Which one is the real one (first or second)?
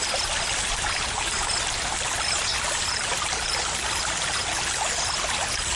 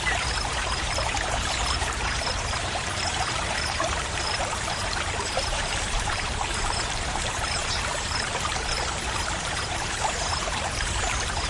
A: first